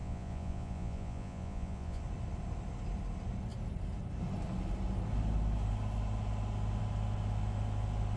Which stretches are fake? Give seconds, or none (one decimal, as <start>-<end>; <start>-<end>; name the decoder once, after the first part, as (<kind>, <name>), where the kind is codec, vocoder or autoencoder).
0.0-2.0 (vocoder, Vocos)